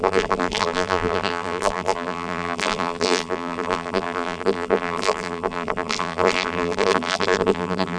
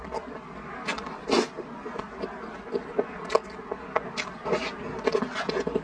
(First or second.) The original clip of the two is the second